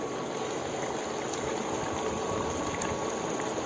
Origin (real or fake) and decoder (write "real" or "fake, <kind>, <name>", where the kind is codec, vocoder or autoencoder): real